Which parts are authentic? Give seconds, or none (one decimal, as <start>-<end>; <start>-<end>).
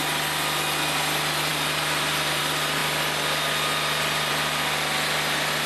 0.0-5.7